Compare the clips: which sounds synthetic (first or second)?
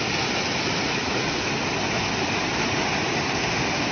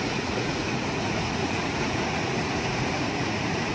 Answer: second